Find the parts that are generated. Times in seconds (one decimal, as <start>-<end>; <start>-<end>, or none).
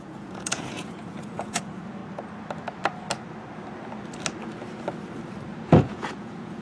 0.0-2.0; 5.7-6.6